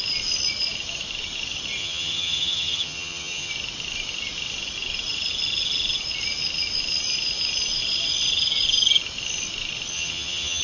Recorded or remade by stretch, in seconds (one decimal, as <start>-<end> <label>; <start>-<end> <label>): 0.0-1.8 recorded; 1.8-3.5 remade; 3.5-9.9 recorded; 9.9-10.6 remade